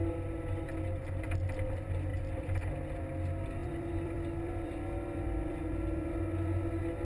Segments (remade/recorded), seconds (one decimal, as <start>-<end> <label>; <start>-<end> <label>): 0.0-2.1 recorded; 2.1-2.6 remade; 2.6-3.6 recorded; 3.6-6.1 remade; 6.1-7.0 recorded